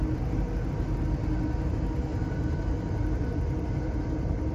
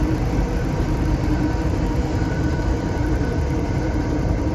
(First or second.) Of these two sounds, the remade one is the second